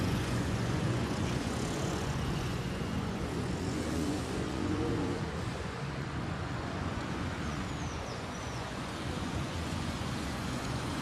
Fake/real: fake